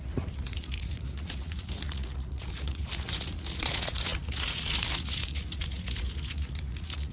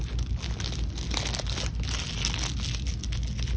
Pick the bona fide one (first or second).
second